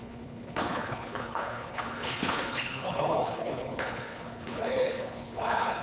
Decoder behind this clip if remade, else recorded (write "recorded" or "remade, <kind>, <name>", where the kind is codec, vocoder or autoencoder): remade, codec, HILCodec